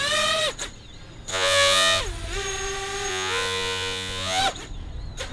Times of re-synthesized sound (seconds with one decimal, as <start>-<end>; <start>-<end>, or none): 1.3-2.0; 3.1-4.4